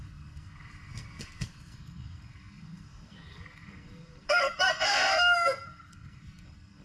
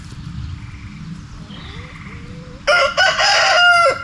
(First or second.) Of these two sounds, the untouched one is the second